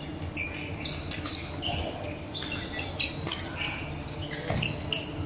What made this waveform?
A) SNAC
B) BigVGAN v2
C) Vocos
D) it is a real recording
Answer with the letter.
D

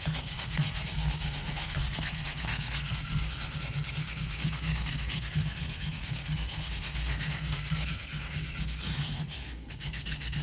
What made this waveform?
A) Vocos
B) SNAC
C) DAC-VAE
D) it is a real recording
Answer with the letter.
B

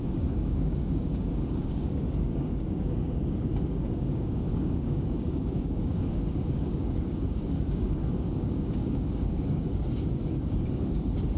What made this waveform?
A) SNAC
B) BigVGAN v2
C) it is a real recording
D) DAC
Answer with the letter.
D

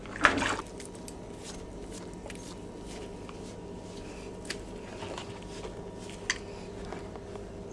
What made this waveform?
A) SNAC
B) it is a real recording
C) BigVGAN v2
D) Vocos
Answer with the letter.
B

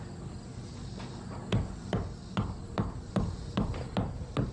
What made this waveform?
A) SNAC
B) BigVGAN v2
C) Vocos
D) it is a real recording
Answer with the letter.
D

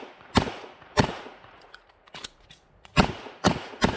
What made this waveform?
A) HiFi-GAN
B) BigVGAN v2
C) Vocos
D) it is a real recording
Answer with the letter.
C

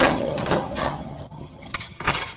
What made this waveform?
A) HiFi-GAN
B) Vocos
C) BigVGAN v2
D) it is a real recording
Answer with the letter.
A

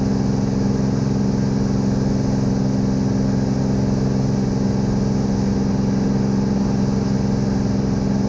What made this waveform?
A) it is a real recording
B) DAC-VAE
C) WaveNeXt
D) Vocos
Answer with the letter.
A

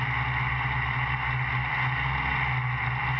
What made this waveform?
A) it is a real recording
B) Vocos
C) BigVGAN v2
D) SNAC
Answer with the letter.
A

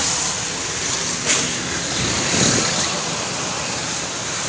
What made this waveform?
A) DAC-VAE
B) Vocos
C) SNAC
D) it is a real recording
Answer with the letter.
D